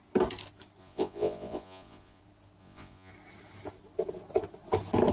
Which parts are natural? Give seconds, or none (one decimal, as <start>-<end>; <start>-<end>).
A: 0.0-0.8; 2.2-2.6; 3.1-5.1